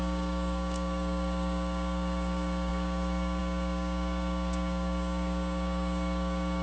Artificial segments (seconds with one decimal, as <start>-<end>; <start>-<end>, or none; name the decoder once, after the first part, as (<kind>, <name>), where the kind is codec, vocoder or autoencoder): 0.0-6.6 (codec, DAC)